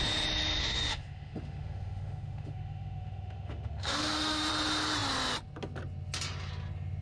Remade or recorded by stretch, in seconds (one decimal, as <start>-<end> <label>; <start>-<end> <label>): 0.0-0.6 recorded; 0.6-4.5 remade; 4.5-7.0 recorded